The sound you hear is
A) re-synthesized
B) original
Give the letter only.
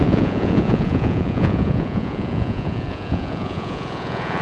A